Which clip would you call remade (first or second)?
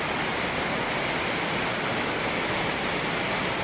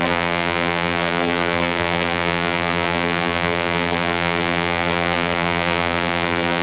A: second